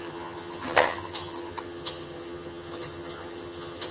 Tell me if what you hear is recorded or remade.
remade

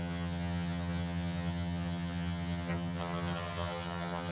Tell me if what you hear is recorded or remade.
remade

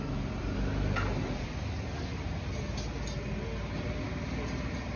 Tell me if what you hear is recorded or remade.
recorded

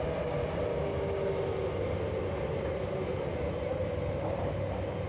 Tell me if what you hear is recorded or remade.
recorded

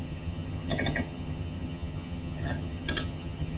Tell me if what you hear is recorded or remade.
remade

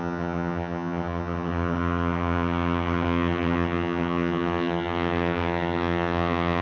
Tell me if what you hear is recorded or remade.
remade